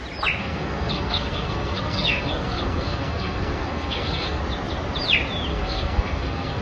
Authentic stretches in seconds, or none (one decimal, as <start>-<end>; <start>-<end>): 0.0-0.4; 4.4-5.5